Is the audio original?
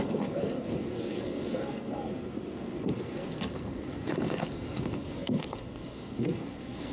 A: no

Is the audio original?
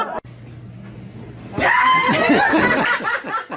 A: yes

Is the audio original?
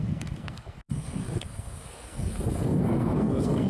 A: no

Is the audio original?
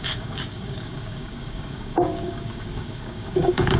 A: no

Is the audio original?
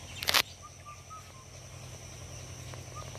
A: yes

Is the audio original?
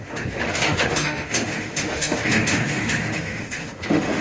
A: no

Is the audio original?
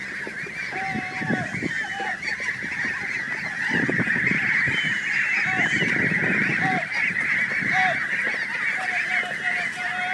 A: yes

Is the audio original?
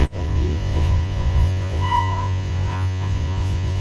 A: no